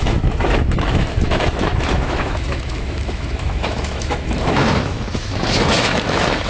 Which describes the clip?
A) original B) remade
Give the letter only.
B